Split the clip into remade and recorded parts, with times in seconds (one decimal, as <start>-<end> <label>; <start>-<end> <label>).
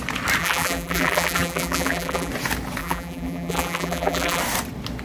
0.0-0.4 recorded; 0.4-2.3 remade; 2.3-2.8 recorded; 2.8-4.4 remade; 4.4-5.0 recorded